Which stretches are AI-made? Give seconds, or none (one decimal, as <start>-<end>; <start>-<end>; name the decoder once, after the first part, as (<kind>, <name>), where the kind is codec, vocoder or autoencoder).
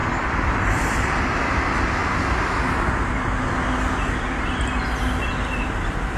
0.0-1.1 (vocoder, BigVGAN v2)